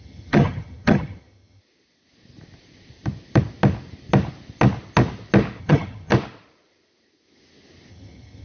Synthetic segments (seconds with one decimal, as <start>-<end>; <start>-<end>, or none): 0.0-1.6; 5.6-6.1; 7.9-8.4